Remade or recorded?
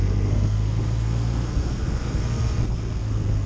remade